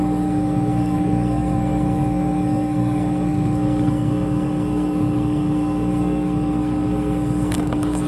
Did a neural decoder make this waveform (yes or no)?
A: yes